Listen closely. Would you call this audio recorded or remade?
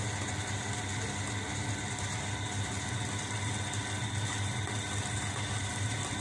recorded